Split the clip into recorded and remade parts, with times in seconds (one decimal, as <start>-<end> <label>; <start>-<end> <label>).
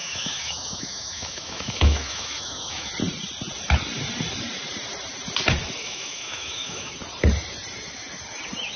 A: 0.0-2.9 remade; 2.9-5.8 recorded; 5.8-6.9 remade; 6.9-8.8 recorded